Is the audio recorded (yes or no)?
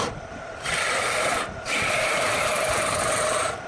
yes